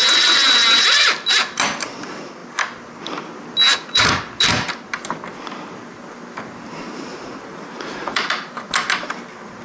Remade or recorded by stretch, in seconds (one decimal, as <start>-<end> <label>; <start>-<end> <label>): 0.0-3.7 recorded; 3.7-4.2 remade; 4.2-7.1 recorded; 7.1-8.5 remade; 8.5-9.6 recorded